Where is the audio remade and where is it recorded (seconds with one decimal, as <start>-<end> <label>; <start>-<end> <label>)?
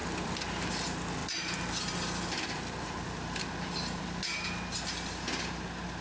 0.0-0.7 remade; 0.7-1.2 recorded; 1.2-4.2 remade; 4.2-6.0 recorded